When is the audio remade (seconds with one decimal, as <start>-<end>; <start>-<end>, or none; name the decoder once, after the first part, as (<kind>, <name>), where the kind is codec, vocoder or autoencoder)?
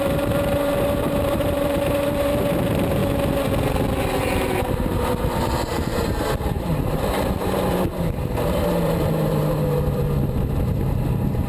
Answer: 0.0-3.0 (vocoder, BigVGAN v2); 4.0-11.5